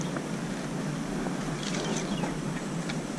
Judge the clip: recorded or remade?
recorded